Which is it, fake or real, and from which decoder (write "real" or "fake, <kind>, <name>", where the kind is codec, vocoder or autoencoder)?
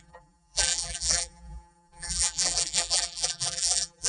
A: fake, vocoder, BigVGAN v2